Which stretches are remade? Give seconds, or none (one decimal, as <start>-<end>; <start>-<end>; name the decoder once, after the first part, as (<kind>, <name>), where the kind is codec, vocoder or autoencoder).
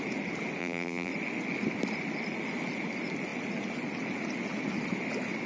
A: 0.6-1.1 (vocoder, BigVGAN v2)